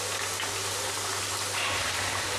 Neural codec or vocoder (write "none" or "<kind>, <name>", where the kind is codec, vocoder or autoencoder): none